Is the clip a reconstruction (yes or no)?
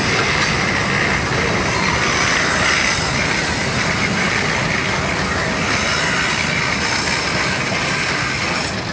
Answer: no